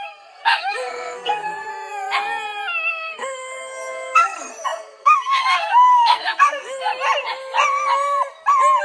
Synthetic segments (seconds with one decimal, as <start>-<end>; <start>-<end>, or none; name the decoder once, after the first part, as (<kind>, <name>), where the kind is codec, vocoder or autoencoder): 0.0-1.7 (codec, SNAC); 2.9-6.9